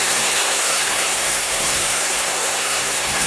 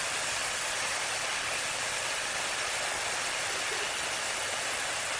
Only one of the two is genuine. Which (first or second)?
second